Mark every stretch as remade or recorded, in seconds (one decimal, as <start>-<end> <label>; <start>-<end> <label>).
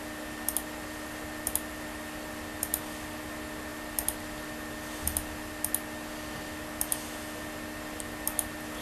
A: 0.0-8.8 recorded